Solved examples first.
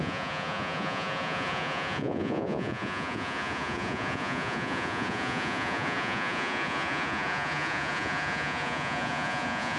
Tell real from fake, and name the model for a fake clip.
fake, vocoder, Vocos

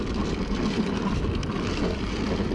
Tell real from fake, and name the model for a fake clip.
real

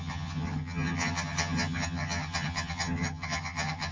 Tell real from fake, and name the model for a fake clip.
fake, vocoder, HiFi-GAN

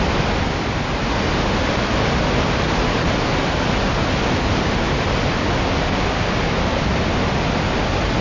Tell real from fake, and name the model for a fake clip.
real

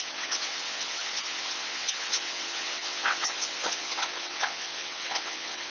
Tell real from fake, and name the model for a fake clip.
fake, vocoder, WaveNeXt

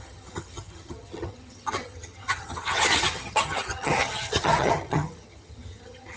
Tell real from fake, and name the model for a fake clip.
fake, vocoder, HiFi-GAN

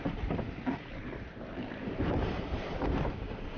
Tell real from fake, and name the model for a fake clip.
fake, vocoder, BigVGAN v2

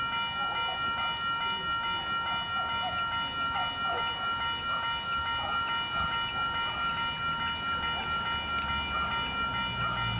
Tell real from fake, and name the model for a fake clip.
real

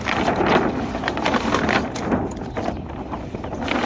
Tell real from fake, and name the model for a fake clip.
real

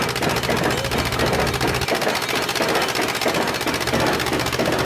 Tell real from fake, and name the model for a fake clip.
real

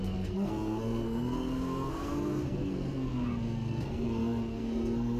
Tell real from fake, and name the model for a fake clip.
fake, codec, SNAC